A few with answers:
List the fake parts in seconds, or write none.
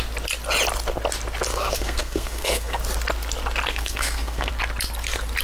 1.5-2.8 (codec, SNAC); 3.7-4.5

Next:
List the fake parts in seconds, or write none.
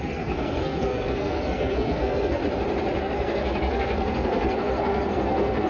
0.0-2.4 (codec, SNAC); 3.0-5.7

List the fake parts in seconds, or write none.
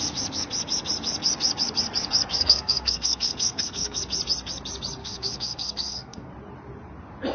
2.3-4.0 (codec, SNAC); 5.0-6.3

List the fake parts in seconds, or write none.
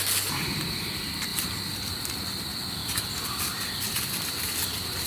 none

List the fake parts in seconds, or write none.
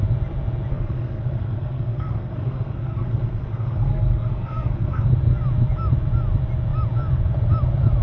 0.7-5.1 (codec, SNAC)